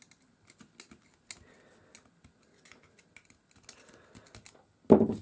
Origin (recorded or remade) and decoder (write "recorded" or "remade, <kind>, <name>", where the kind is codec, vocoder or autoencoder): recorded